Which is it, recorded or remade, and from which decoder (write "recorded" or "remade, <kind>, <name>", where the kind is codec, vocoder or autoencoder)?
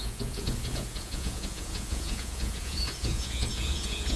remade, vocoder, Vocos